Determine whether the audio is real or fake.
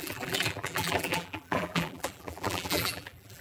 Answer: fake